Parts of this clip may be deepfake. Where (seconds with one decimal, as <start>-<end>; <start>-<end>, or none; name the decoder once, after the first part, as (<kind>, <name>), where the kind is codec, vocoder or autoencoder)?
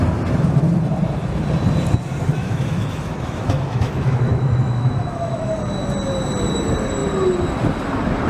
2.4-5.6 (autoencoder, DAC-VAE)